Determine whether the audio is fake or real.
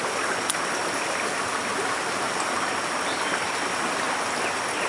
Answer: real